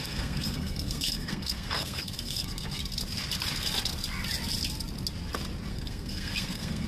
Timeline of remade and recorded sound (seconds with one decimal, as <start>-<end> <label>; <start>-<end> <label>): 0.0-2.8 remade; 2.8-5.7 recorded; 5.7-6.9 remade